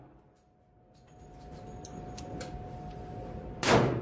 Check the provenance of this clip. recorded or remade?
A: recorded